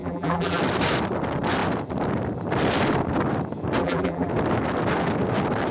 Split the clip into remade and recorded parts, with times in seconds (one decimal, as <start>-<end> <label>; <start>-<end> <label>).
0.0-0.6 remade; 0.6-3.8 recorded; 3.8-4.3 remade; 4.3-5.7 recorded